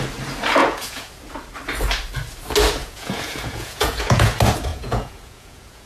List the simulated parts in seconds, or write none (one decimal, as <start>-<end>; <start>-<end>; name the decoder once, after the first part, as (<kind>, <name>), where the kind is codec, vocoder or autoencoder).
0.6-1.1 (vocoder, Vocos); 2.8-4.3; 4.7-5.9